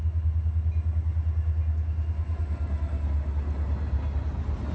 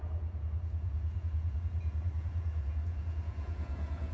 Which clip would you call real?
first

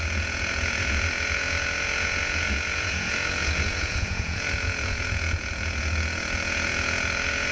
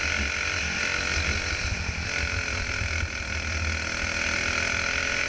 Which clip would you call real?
second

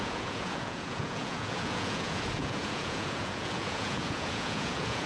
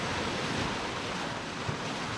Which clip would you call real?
second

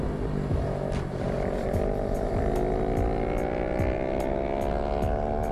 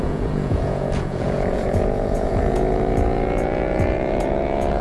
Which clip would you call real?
first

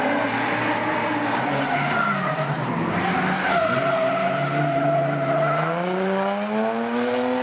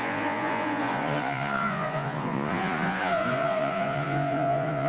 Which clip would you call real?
first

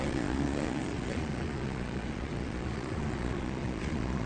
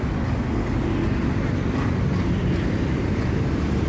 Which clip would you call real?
second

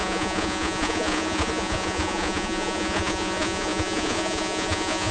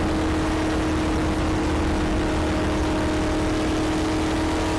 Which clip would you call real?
second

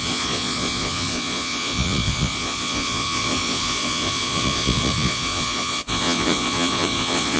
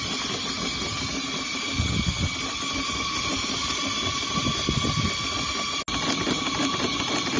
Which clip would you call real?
second